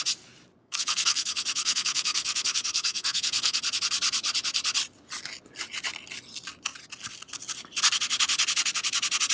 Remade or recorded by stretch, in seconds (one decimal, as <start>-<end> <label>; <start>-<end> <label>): 0.0-0.6 recorded; 0.6-3.6 remade; 3.6-9.3 recorded